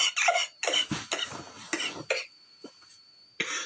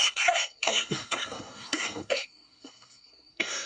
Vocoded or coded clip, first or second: second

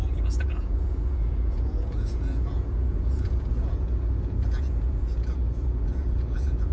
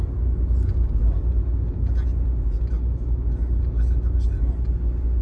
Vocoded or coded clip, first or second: first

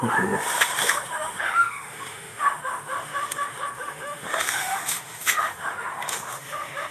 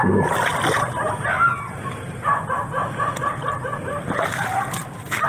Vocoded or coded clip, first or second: first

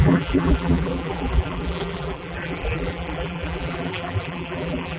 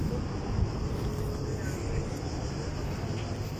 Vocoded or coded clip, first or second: first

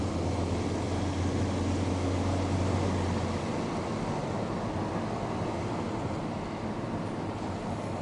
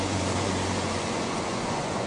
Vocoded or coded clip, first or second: second